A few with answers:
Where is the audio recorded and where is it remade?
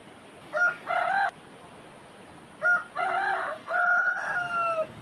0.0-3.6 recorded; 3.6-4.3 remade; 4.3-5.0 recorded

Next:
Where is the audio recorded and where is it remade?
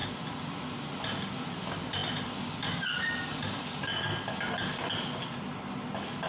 0.0-6.3 recorded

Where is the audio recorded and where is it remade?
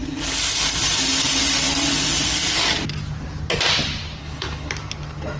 0.0-4.2 recorded; 4.2-4.7 remade; 4.7-5.4 recorded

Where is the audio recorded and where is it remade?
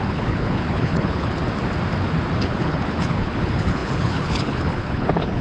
0.0-1.4 remade; 1.4-2.4 recorded; 2.4-5.4 remade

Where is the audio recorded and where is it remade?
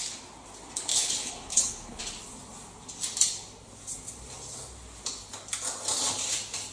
0.0-0.9 recorded; 0.9-2.0 remade; 2.0-6.7 recorded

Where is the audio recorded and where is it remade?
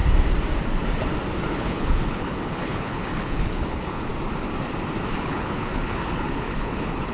0.0-1.5 recorded; 1.5-4.1 remade; 4.1-5.1 recorded; 5.1-7.1 remade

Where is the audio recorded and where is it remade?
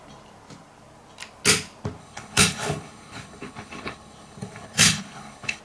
0.0-2.0 recorded; 2.0-5.6 remade